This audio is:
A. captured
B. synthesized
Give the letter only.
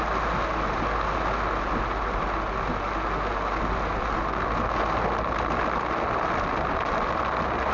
A